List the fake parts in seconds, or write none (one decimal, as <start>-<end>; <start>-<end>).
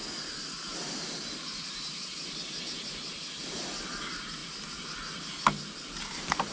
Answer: none